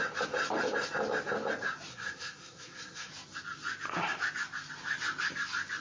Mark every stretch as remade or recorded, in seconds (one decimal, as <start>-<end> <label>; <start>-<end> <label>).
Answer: 0.0-1.9 recorded; 1.9-3.1 remade; 3.1-5.8 recorded